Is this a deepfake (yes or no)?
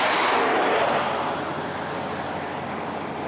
no